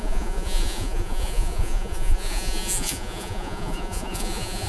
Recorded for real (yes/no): no